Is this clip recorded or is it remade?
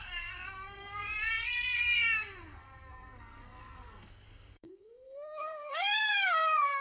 remade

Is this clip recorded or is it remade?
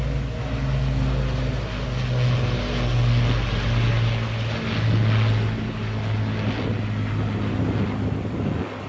recorded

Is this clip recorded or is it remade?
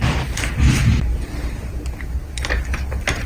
recorded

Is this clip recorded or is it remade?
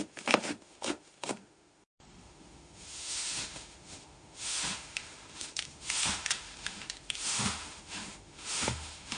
remade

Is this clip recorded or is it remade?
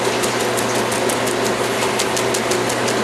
recorded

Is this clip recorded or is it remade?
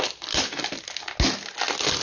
recorded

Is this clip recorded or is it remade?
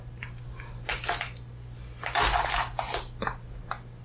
recorded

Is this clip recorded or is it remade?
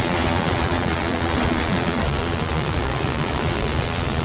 remade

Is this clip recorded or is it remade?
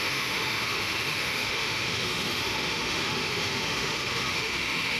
remade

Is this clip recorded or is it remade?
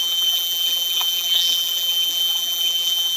remade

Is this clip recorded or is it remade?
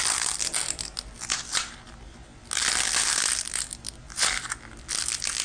recorded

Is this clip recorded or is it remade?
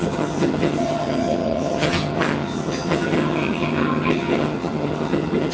remade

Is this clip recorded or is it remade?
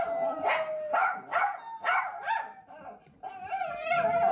recorded